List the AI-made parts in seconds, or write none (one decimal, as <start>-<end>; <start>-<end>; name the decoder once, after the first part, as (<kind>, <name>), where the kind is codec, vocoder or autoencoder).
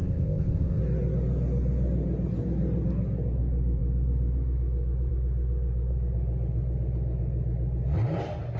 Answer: 0.0-0.8 (codec, ZipCodec)